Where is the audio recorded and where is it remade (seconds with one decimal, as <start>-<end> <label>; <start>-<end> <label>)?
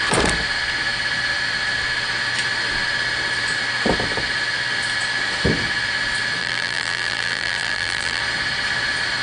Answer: 0.0-6.4 recorded; 6.4-8.2 remade; 8.2-9.2 recorded